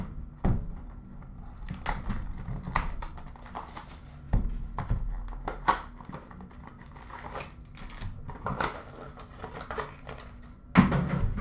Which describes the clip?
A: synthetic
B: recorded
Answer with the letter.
B